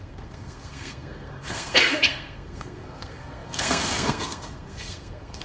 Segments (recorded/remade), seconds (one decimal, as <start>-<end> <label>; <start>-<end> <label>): 0.0-5.4 remade